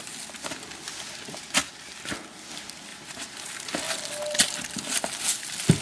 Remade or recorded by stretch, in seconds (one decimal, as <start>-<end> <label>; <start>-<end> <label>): 0.0-2.9 recorded; 2.9-3.8 remade; 3.8-5.8 recorded